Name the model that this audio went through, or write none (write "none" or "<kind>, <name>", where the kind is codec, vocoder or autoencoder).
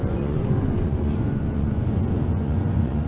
vocoder, Vocos